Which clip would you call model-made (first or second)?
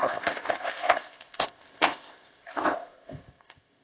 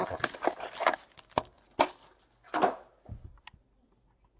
first